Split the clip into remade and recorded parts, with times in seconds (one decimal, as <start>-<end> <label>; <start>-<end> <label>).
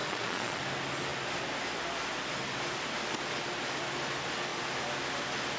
0.0-0.6 remade; 0.6-5.6 recorded